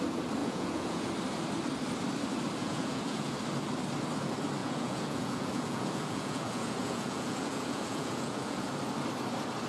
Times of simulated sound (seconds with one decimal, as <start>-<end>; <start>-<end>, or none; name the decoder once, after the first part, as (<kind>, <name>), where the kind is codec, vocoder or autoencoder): 0.4-1.1 (vocoder, Vocos); 2.6-3.4; 4.6-8.7